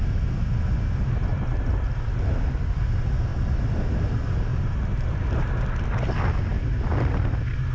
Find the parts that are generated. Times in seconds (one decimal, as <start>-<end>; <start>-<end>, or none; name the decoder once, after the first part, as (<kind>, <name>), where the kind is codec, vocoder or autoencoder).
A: 1.3-2.0 (vocoder, BigVGAN v2); 3.3-4.1; 4.5-5.1; 6.5-7.2